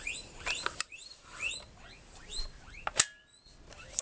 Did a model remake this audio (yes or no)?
no